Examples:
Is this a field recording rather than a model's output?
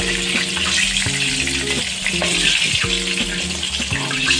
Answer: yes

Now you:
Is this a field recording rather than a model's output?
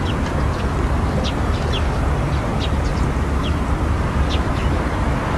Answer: yes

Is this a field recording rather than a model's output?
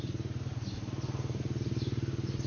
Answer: yes